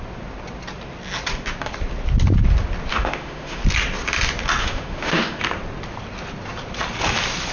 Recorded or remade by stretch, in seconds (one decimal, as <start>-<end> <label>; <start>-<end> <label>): 0.0-2.9 recorded; 2.9-3.6 remade; 3.6-4.6 recorded; 4.6-5.4 remade; 5.4-7.5 recorded